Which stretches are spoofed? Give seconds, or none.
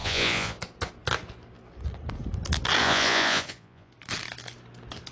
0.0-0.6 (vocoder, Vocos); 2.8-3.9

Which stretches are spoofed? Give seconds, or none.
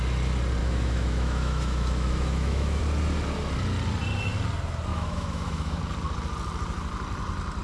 0.6-2.8 (autoencoder, DAC-VAE); 4.9-5.8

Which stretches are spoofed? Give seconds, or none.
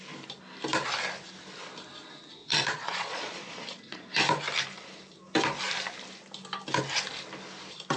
2.4-4.1 (vocoder, Vocos)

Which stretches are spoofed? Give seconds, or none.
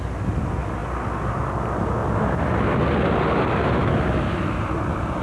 none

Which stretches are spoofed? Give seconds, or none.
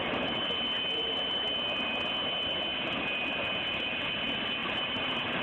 4.6-5.4 (vocoder, BigVGAN v2)